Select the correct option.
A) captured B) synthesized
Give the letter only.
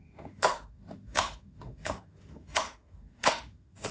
B